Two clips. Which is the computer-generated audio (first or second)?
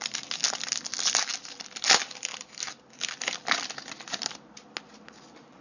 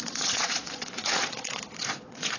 second